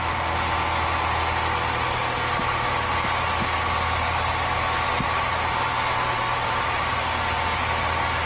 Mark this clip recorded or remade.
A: recorded